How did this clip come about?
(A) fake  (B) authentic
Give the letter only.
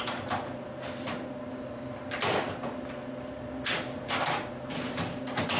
B